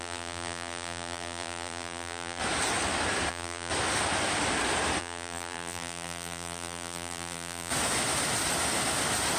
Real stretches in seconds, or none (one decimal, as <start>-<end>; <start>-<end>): 2.4-3.3; 3.7-5.0; 7.7-9.4